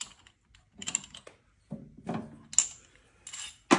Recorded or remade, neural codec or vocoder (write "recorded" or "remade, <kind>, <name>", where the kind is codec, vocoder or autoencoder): recorded